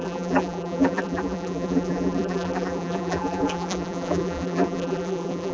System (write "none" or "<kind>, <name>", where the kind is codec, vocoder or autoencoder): vocoder, BigVGAN v2